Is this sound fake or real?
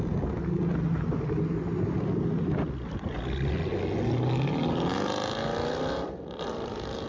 real